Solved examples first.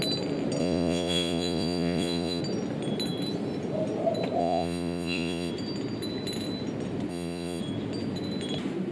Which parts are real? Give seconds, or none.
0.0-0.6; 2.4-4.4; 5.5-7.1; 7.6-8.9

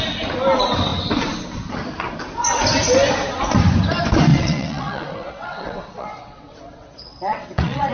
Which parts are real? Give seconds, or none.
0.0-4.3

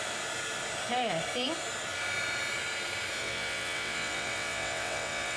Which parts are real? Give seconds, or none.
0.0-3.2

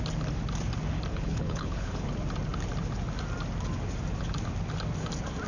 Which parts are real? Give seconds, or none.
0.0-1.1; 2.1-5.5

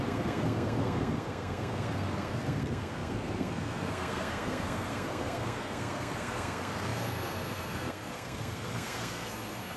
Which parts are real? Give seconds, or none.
none